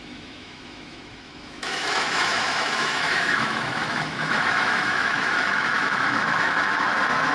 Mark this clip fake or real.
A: fake